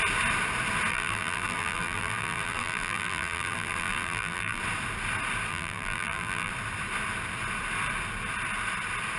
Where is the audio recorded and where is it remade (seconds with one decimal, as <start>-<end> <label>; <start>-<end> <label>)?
0.0-0.9 recorded; 0.9-4.6 remade; 4.6-5.5 recorded; 5.5-6.5 remade; 6.5-9.2 recorded